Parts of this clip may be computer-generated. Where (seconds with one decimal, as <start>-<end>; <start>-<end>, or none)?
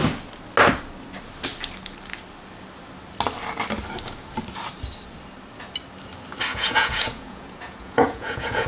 6.5-8.7